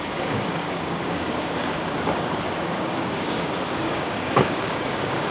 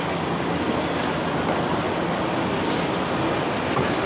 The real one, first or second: second